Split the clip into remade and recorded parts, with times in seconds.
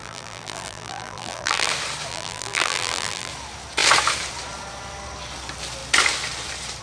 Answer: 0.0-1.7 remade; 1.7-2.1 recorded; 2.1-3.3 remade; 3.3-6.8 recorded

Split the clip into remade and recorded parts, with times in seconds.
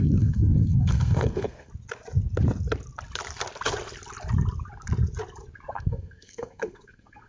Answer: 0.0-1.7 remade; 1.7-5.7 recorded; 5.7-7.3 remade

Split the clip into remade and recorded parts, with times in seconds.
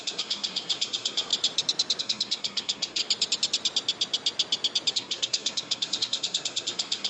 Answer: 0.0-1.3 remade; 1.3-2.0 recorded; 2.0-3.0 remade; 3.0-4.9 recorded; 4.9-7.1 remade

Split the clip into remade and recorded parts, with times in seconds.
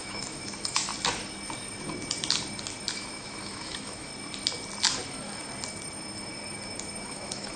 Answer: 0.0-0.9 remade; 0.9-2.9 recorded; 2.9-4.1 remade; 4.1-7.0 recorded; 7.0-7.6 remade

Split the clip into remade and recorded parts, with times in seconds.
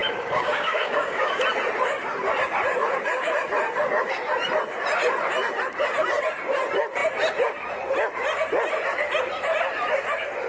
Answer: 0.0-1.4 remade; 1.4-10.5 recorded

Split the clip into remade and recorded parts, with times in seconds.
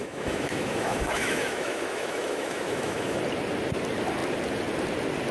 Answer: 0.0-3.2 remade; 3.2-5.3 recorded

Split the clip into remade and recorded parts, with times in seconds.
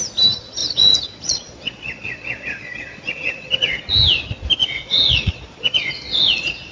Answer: 0.0-0.6 recorded; 0.6-3.8 remade; 3.8-4.6 recorded; 4.6-6.7 remade